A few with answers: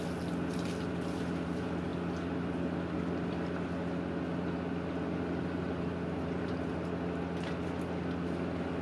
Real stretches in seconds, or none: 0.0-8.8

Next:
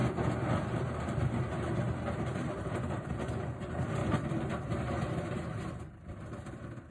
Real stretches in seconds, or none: 0.0-0.6; 4.0-4.5

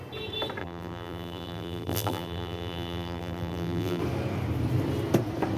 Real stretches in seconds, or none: 0.0-0.6; 4.0-5.6

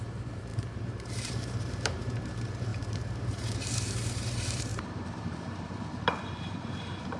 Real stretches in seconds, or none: none

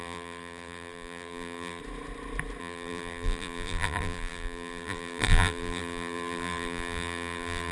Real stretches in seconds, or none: 1.8-2.6

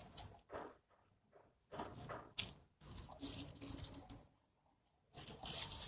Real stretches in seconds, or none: 0.0-5.9